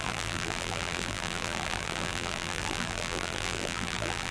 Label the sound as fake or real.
fake